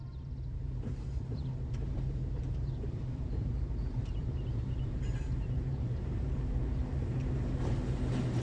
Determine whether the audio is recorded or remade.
remade